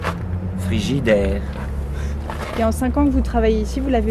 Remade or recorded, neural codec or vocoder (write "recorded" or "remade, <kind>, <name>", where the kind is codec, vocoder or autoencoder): recorded